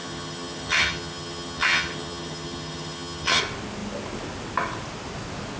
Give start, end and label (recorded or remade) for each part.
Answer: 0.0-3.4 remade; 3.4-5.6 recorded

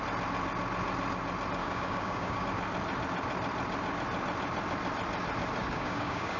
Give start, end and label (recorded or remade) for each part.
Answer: 0.0-1.6 recorded; 1.6-2.4 remade; 2.4-5.6 recorded; 5.6-6.4 remade

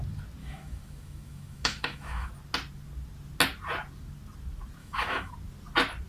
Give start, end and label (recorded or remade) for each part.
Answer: 0.0-0.4 recorded; 0.4-2.3 remade; 2.3-4.8 recorded; 4.8-5.3 remade; 5.3-6.1 recorded

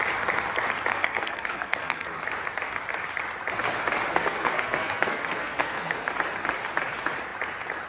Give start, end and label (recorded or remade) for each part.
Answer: 0.0-0.9 recorded; 0.9-2.2 remade; 2.2-4.1 recorded; 4.1-6.1 remade; 6.1-7.9 recorded

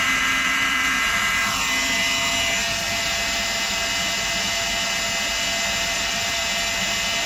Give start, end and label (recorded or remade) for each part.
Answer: 0.0-1.4 remade; 1.4-5.8 recorded; 5.8-6.4 remade; 6.4-7.3 recorded